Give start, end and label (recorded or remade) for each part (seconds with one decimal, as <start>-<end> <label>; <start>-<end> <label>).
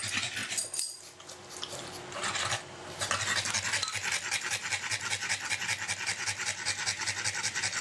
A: 0.0-7.8 recorded